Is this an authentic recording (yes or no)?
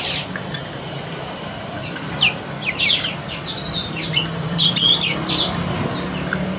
no